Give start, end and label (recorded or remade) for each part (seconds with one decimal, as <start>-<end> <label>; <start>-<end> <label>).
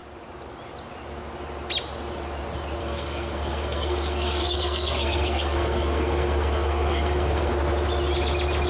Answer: 0.0-2.8 recorded; 2.8-7.5 remade; 7.5-8.7 recorded